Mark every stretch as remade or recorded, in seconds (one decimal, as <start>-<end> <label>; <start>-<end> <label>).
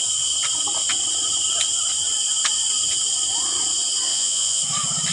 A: 0.0-4.1 recorded; 4.1-4.6 remade; 4.6-5.1 recorded